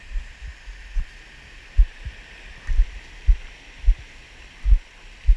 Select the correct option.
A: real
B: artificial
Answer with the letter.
A